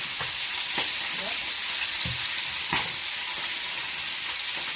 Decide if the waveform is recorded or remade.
recorded